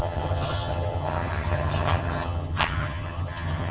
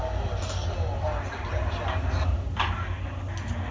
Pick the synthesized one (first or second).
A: first